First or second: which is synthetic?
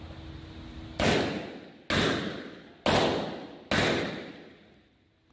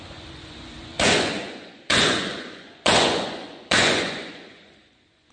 second